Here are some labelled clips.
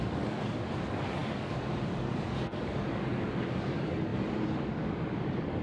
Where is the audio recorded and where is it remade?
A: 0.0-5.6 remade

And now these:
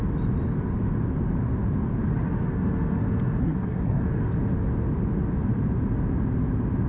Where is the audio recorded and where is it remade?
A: 0.0-3.4 recorded; 3.4-4.0 remade; 4.0-6.9 recorded